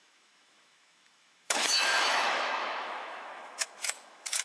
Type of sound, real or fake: fake